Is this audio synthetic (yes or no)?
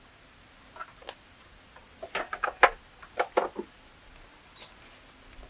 no